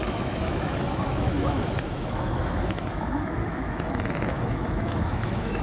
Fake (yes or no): yes